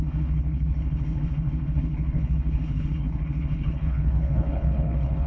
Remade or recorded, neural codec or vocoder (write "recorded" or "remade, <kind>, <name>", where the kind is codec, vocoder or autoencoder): remade, codec, HILCodec